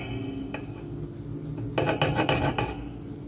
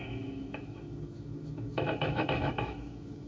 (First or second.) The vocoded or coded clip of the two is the second